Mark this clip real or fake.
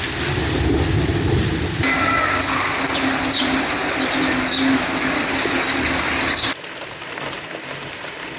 real